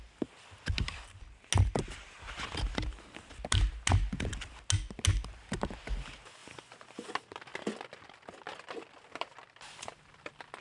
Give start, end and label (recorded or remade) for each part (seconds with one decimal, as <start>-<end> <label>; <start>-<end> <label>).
0.0-6.4 recorded; 6.4-7.1 remade; 7.1-10.6 recorded